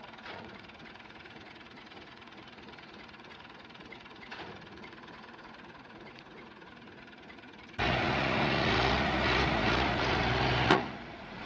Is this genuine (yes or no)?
no